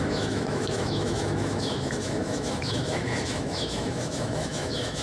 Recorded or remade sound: remade